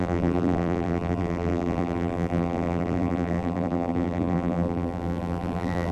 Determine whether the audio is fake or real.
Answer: fake